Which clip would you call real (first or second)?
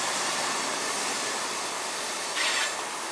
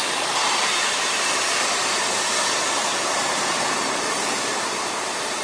first